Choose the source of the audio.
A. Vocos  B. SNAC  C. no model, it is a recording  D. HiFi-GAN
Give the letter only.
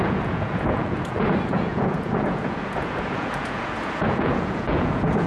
A